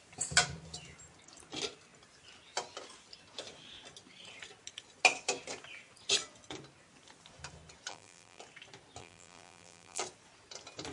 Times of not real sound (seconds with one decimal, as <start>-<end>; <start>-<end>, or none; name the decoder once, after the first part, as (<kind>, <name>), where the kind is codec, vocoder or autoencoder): 7.9-8.4 (vocoder, BigVGAN v2); 9.0-10.0